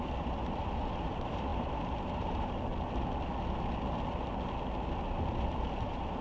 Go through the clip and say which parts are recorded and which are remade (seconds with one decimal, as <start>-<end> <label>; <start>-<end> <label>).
0.0-2.7 remade; 2.7-5.8 recorded; 5.8-6.2 remade